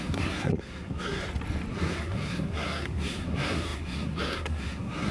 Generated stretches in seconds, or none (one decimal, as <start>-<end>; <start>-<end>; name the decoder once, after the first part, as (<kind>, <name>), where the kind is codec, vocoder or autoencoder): 0.0-1.2 (codec, SNAC); 1.7-5.1